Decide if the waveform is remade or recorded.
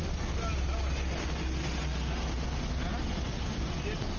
recorded